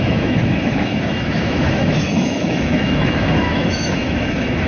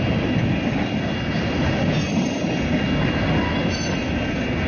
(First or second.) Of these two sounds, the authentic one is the second